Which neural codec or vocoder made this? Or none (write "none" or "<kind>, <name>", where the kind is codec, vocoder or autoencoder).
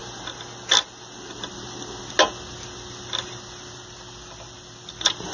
none